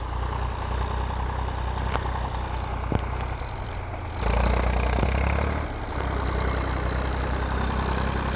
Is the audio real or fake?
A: real